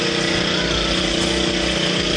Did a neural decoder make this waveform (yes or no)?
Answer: no